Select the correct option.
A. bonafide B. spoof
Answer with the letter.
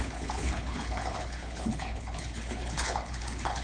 B